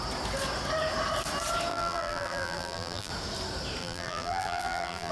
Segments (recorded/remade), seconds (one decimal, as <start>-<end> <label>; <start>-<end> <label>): 0.0-1.7 recorded; 1.7-3.1 remade; 3.1-3.8 recorded; 3.8-5.1 remade

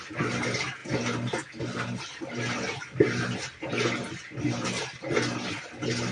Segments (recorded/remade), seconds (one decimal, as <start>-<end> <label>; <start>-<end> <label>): 0.0-6.1 recorded

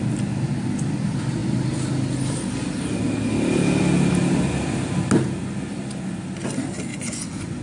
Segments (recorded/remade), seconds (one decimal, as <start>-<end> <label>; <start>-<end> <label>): 0.0-6.9 recorded; 6.9-7.6 remade

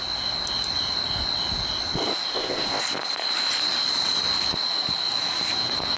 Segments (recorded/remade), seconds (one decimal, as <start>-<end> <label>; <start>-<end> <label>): 0.0-2.3 recorded; 2.3-2.8 remade; 2.8-6.0 recorded

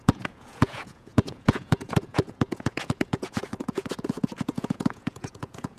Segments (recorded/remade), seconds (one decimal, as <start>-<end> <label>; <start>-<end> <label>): 0.0-5.8 remade

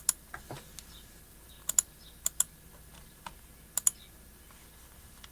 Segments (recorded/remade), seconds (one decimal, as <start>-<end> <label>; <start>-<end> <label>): 0.0-5.3 recorded

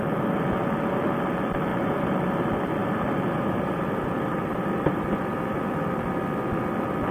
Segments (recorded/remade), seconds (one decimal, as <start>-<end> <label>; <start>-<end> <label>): 0.0-1.7 recorded; 1.7-2.2 remade; 2.2-2.8 recorded; 2.8-5.6 remade; 5.6-7.1 recorded

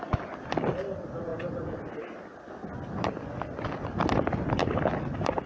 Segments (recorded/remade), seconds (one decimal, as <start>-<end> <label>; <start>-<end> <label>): 0.0-1.3 remade; 1.3-4.5 recorded; 4.5-5.5 remade